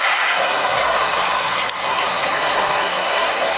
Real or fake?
fake